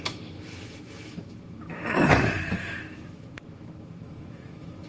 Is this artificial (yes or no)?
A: yes